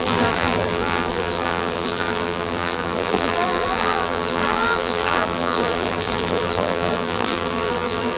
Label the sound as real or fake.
fake